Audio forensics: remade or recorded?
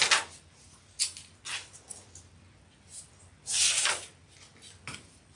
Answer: recorded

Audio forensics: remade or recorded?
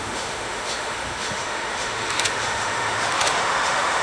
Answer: remade